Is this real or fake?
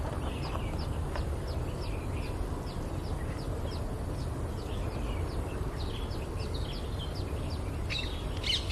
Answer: real